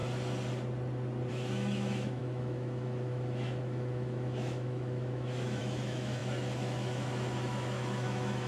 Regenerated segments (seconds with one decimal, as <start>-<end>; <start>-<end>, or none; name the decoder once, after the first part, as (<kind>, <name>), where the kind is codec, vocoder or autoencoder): 1.3-8.5 (autoencoder, DAC-VAE)